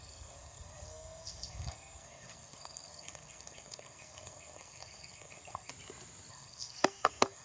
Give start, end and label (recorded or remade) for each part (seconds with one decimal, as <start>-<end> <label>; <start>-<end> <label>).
0.0-5.7 remade; 5.7-6.3 recorded; 6.3-7.4 remade